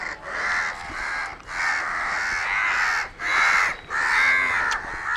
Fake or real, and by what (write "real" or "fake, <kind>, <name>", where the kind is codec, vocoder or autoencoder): real